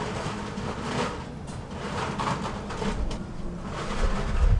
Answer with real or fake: real